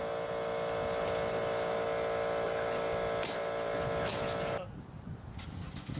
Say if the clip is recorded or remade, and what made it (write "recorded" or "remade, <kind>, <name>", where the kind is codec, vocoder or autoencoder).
recorded